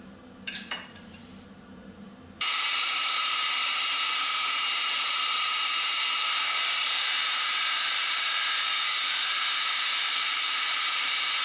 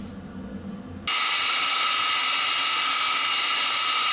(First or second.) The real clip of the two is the second